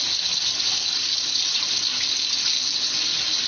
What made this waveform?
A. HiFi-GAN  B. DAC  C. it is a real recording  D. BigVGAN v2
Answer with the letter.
C